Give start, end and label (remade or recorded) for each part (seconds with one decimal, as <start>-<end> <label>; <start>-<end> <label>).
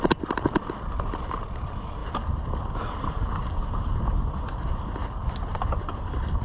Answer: 0.0-6.4 recorded